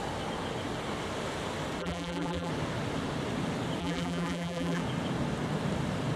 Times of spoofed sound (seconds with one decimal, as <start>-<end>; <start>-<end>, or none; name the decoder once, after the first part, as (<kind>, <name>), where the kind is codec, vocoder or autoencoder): 1.8-2.5 (vocoder, BigVGAN v2); 3.8-4.8